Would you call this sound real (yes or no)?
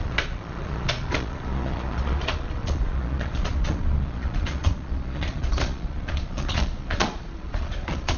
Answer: no